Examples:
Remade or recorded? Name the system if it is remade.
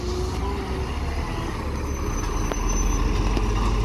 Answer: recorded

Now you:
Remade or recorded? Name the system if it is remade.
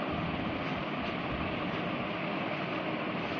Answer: recorded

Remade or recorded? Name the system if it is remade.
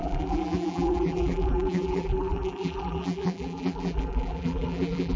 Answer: remade, vocoder, BigVGAN v2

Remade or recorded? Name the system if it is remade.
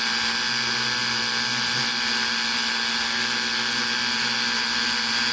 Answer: recorded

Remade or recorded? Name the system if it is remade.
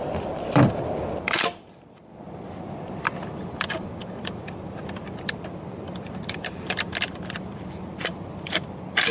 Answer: remade, vocoder, BigVGAN v2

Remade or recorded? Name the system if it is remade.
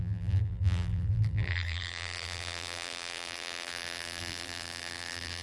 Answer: remade, vocoder, BigVGAN v2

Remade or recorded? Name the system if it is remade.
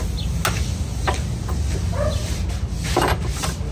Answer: recorded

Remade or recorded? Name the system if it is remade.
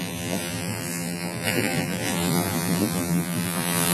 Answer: remade, vocoder, BigVGAN v2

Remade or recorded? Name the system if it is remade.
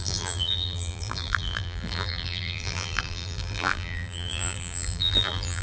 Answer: remade, vocoder, BigVGAN v2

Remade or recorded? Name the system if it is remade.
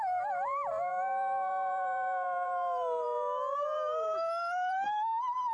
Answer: remade, vocoder, BigVGAN v2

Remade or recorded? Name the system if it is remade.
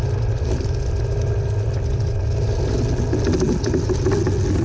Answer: recorded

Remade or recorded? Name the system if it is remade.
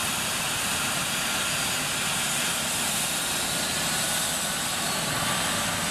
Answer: recorded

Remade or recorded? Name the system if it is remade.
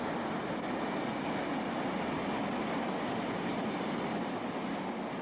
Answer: recorded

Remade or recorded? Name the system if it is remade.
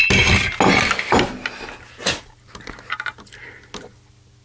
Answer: recorded